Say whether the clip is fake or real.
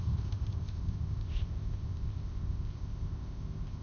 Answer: fake